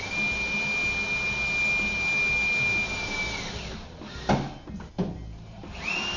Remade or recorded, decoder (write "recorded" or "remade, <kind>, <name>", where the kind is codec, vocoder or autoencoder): recorded